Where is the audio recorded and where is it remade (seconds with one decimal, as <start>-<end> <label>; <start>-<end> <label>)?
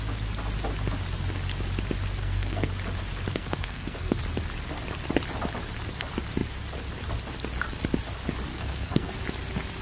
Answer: 0.0-2.2 recorded; 2.2-2.7 remade; 2.7-3.3 recorded; 3.3-4.2 remade; 4.2-8.5 recorded; 8.5-9.1 remade; 9.1-9.8 recorded